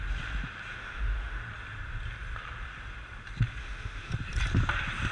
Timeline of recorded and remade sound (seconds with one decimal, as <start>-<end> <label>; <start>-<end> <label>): 0.0-0.8 recorded; 0.8-1.4 remade; 1.4-3.6 recorded; 3.6-4.1 remade; 4.1-5.1 recorded